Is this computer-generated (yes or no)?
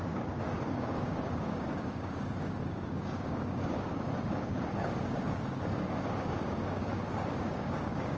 yes